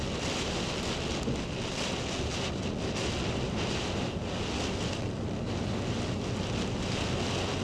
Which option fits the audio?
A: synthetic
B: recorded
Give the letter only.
B